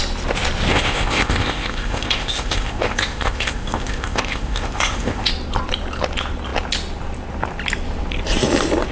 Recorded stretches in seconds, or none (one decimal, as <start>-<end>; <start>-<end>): 0.0-0.7; 5.3-8.9